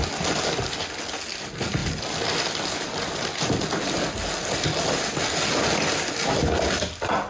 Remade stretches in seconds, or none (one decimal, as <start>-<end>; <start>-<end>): none